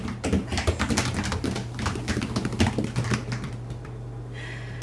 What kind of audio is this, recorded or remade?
recorded